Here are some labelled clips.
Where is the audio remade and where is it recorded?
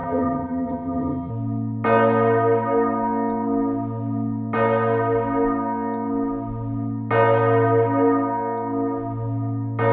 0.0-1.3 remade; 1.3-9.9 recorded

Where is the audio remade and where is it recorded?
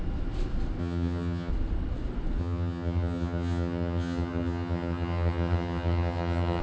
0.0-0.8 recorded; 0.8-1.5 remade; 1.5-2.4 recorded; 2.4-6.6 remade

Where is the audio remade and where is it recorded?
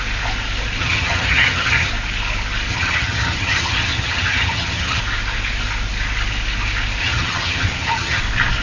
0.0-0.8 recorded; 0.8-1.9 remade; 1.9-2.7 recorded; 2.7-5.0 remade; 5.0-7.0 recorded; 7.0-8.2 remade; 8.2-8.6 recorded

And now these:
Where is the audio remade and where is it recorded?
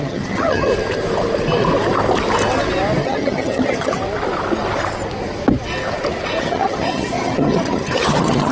0.0-0.7 remade; 0.7-3.0 recorded; 3.0-4.0 remade; 4.0-6.4 recorded; 6.4-8.5 remade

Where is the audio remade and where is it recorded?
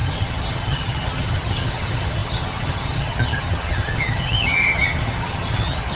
0.0-5.9 remade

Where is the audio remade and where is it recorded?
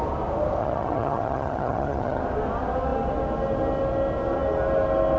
0.0-0.6 recorded; 0.6-2.2 remade; 2.2-5.2 recorded